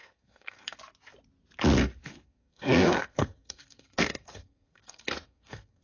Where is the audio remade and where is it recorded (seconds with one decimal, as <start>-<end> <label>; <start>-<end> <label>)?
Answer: 0.0-0.8 remade; 0.8-2.0 recorded; 2.0-5.8 remade